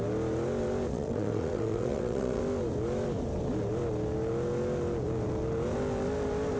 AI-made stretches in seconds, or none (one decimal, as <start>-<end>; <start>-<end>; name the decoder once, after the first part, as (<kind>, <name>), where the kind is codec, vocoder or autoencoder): 0.9-2.4 (vocoder, WaveNeXt)